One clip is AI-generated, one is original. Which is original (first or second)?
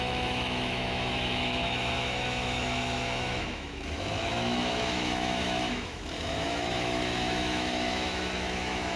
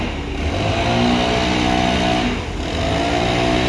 second